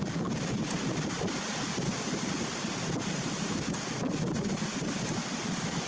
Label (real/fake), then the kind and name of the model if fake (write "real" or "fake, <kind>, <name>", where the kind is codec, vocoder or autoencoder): real